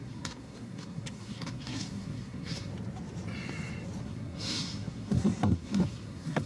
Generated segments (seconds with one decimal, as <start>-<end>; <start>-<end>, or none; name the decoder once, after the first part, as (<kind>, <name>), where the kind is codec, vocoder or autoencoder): 0.0-2.7 (codec, SNAC); 4.0-6.5